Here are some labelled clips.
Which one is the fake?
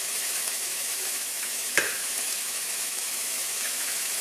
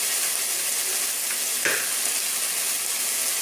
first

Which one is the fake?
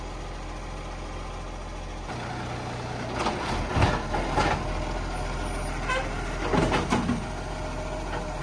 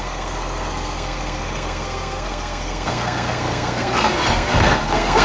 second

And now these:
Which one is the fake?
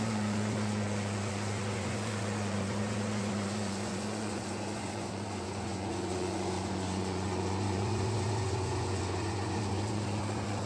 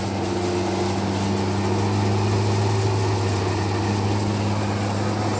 first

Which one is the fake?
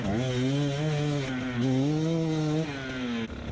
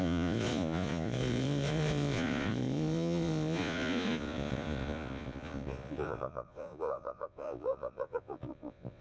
second